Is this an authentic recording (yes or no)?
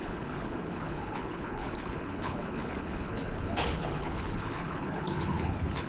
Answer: no